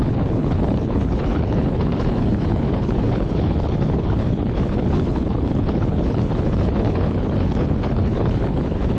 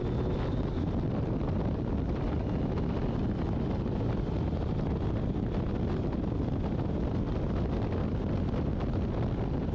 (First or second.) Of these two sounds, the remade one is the first